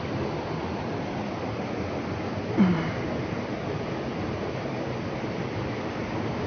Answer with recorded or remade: recorded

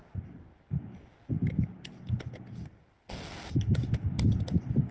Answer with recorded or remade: recorded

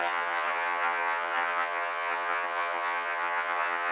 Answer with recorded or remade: remade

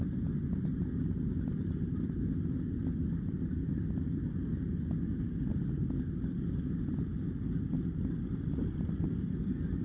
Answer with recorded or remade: recorded